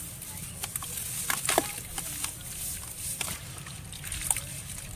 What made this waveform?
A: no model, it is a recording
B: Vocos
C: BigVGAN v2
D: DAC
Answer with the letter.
A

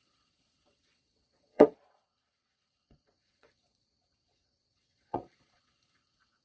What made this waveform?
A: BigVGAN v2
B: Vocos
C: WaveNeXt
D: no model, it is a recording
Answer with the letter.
B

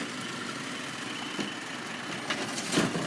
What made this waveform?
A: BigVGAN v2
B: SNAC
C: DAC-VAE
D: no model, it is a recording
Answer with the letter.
D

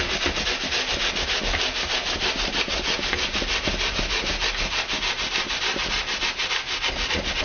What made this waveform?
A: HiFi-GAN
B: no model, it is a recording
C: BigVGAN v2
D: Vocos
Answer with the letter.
B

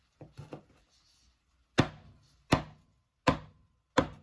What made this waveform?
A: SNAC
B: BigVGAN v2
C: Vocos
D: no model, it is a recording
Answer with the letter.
D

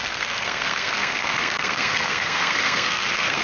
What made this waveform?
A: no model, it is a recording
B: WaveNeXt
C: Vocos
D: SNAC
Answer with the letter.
D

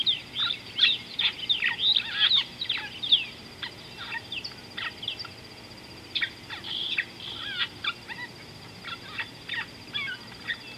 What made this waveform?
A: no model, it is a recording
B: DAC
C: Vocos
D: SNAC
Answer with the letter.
A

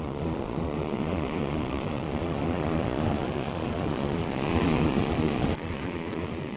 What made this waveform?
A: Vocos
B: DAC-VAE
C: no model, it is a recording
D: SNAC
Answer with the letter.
A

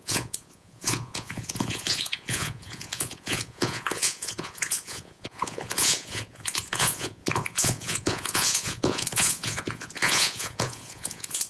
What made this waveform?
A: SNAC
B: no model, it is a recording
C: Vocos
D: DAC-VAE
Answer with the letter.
C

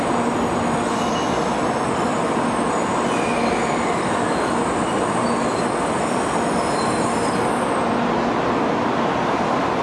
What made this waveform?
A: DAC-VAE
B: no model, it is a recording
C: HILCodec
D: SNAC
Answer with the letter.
B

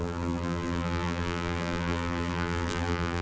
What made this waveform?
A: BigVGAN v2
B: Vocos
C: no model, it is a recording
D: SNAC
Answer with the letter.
A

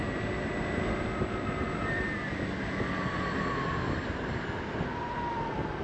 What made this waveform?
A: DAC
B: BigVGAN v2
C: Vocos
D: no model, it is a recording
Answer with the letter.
D